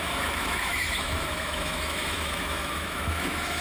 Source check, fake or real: fake